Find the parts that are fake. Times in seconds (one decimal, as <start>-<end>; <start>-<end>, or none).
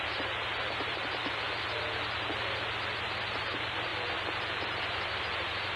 0.0-1.2; 3.4-3.9; 4.6-5.8